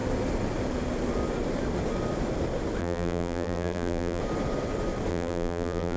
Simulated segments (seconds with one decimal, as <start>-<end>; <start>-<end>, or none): 2.8-4.2; 5.1-6.0